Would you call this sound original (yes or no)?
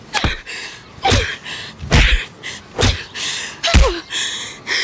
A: yes